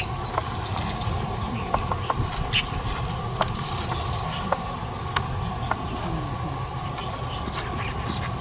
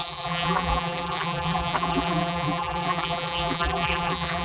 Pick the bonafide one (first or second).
first